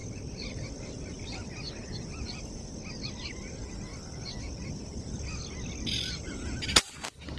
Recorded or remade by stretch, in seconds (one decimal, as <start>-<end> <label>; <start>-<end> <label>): 0.0-2.8 remade; 2.8-3.9 recorded; 3.9-6.9 remade; 6.9-7.4 recorded